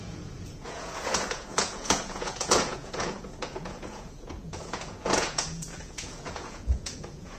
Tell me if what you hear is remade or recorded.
remade